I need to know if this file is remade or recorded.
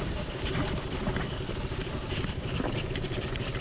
recorded